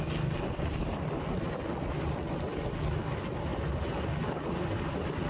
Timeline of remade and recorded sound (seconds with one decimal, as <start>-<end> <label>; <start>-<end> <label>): 0.0-5.3 recorded